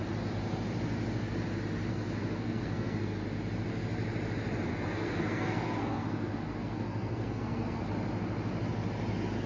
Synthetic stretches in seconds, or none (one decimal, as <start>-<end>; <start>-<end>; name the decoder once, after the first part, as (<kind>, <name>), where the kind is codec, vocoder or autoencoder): 1.9-3.2 (codec, SNAC); 4.7-7.8